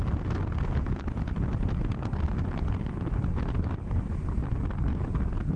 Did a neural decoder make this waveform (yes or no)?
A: no